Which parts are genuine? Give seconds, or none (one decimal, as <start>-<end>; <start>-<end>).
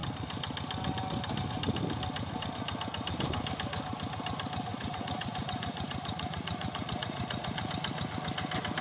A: 0.0-4.7; 7.7-8.8